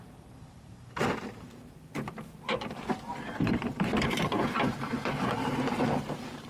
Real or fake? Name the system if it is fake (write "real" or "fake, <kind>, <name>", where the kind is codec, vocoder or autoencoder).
fake, vocoder, BigVGAN v2